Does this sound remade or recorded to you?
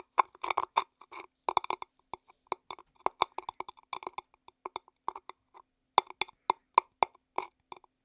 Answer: recorded